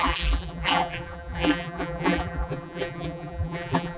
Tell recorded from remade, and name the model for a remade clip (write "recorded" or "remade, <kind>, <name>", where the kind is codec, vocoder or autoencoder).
remade, vocoder, BigVGAN v2